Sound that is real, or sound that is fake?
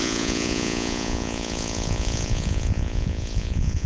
fake